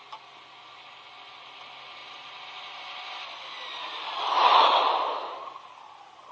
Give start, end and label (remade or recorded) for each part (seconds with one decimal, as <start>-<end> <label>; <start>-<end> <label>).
0.0-6.3 recorded